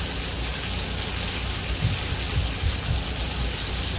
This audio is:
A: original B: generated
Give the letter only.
A